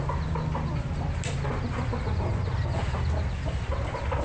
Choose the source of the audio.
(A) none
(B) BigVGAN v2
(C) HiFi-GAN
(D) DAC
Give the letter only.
A